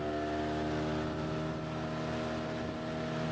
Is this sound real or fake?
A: real